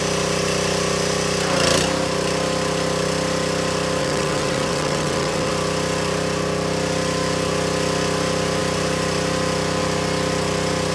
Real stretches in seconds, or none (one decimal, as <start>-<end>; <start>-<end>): 0.0-4.0; 5.5-10.9